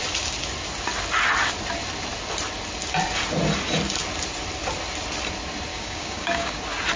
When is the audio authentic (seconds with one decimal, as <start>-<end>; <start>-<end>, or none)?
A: 0.0-5.7; 6.6-7.0